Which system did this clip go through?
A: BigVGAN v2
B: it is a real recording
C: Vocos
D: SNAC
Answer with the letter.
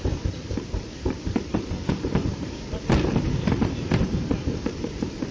A